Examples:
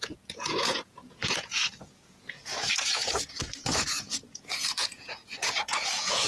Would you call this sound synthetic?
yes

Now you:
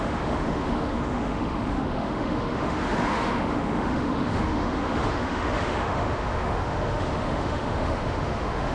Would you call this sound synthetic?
yes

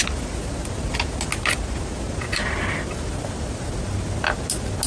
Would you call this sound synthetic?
no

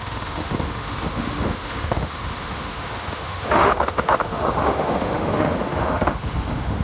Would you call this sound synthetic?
yes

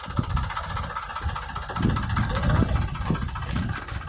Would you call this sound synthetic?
no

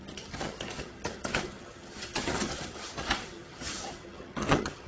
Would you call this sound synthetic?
yes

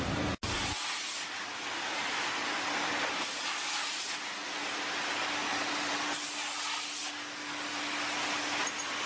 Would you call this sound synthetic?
no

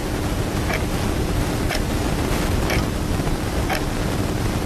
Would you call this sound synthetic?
no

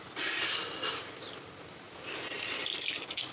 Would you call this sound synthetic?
yes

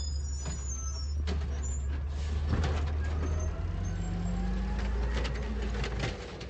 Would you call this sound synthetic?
no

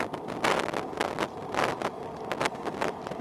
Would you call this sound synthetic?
no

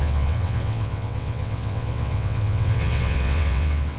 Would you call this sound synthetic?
yes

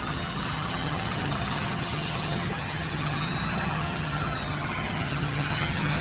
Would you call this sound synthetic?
yes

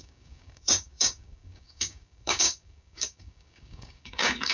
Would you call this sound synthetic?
yes